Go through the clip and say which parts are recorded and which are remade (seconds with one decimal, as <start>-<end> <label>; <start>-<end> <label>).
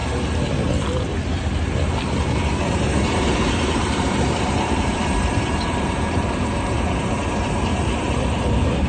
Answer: 0.0-2.4 recorded; 2.4-8.9 remade